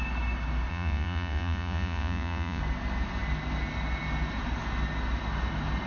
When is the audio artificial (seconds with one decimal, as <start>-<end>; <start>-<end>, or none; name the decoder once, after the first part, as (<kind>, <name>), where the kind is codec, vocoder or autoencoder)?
0.7-2.6 (vocoder, Vocos)